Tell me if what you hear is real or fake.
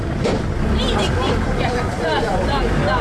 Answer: fake